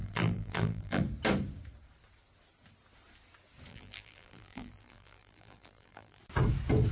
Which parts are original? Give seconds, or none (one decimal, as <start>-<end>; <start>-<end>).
1.0-3.7; 6.2-6.9